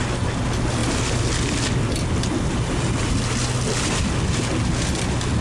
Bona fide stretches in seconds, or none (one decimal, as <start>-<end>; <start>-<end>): 0.0-5.4